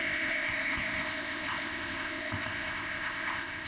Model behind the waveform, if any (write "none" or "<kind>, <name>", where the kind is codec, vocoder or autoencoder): codec, ZipCodec